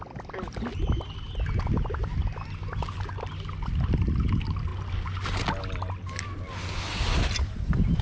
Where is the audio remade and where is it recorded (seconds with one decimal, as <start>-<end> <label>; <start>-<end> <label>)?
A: 0.0-8.0 recorded